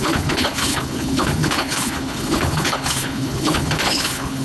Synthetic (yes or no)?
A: yes